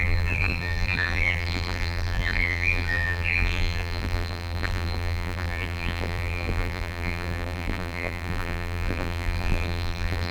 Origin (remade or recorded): remade